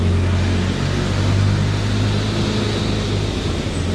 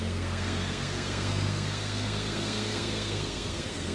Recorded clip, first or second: first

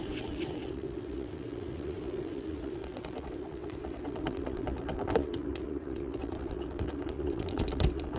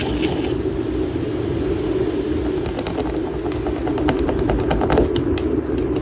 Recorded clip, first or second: second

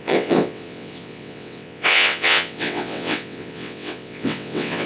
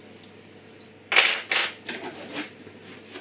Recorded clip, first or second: second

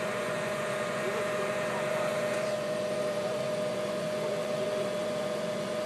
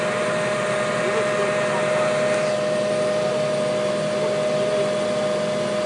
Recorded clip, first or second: second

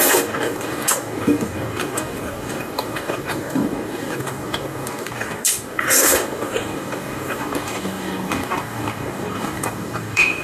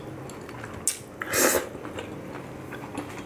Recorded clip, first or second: second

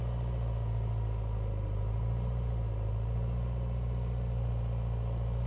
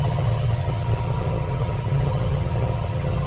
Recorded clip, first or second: first